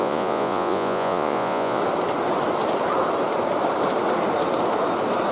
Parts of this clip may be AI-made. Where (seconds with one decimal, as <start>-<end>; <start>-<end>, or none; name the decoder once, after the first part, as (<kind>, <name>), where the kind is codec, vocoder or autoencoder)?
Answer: 0.0-1.8 (vocoder, Vocos)